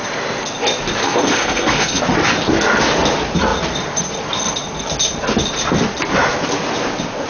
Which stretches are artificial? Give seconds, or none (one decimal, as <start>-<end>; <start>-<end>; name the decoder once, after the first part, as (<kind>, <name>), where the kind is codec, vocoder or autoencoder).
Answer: 1.0-2.0 (codec, SNAC)